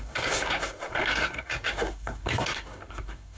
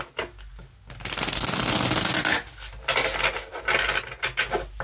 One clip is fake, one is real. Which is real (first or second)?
second